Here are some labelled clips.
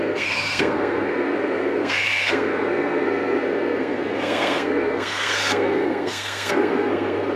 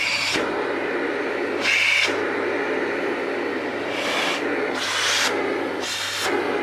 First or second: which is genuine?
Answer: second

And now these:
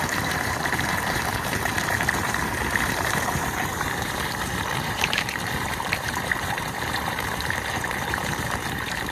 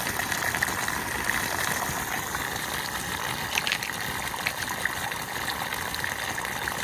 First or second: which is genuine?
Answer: second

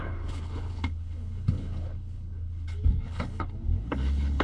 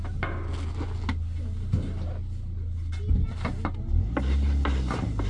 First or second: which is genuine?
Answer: second